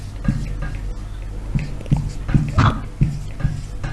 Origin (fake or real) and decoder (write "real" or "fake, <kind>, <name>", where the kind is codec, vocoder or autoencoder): real